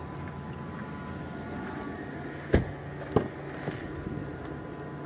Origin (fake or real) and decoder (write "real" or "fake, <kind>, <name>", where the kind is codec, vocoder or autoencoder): real